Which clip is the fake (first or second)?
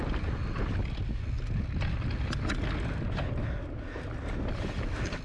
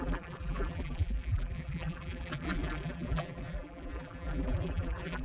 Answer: second